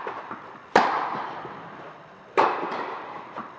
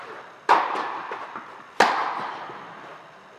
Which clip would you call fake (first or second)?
first